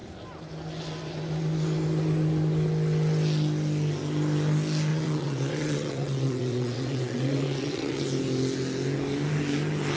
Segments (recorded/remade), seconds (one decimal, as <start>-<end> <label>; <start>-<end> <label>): 0.0-4.9 recorded; 4.9-8.0 remade; 8.0-10.0 recorded